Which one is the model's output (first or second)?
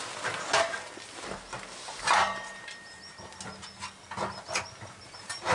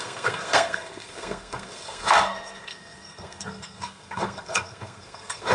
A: second